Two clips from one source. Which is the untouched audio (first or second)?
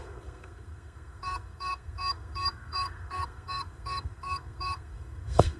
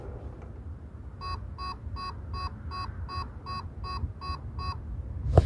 second